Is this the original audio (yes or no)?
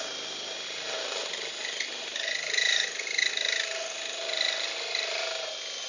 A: yes